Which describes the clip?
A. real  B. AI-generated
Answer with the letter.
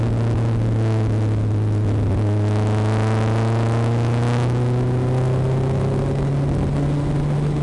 A